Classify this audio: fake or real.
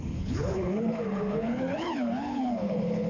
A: fake